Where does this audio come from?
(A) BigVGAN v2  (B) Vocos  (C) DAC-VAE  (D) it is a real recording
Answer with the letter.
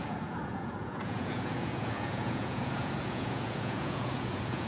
B